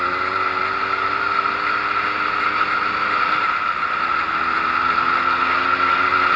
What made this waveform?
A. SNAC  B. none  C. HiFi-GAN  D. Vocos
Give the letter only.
B